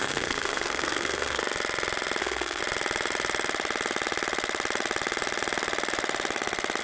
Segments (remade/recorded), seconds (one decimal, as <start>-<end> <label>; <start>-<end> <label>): 0.0-1.4 remade; 1.4-2.2 recorded; 2.2-2.6 remade; 2.6-6.8 recorded